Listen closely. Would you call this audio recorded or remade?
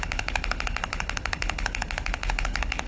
remade